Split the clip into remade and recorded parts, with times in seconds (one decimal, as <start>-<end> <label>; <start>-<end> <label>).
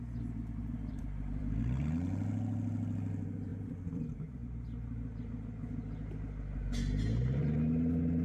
0.0-0.6 recorded; 0.6-1.6 remade; 1.6-3.5 recorded; 3.5-4.0 remade; 4.0-8.2 recorded